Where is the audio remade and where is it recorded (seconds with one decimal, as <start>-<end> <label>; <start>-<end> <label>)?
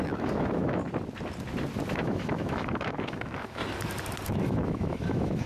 0.0-0.8 remade; 0.8-1.9 recorded; 1.9-3.6 remade; 3.6-4.3 recorded; 4.3-5.5 remade